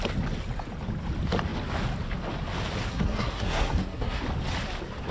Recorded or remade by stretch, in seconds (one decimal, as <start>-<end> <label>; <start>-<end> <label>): 0.0-2.9 recorded; 2.9-4.2 remade; 4.2-5.1 recorded